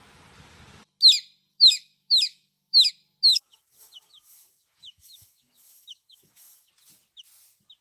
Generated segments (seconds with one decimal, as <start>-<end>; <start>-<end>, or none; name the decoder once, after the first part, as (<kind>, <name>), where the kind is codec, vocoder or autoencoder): 1.5-2.9 (autoencoder, DAC-VAE); 3.3-6.7